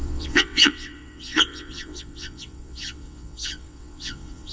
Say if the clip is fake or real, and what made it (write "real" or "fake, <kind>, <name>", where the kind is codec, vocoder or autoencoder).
fake, vocoder, WaveNeXt